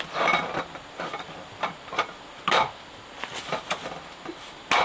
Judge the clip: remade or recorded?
recorded